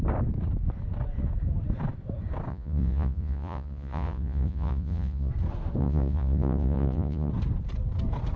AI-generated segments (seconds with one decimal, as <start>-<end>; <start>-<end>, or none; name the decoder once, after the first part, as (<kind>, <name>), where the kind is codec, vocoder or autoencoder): 2.5-5.3 (vocoder, Vocos); 5.8-7.3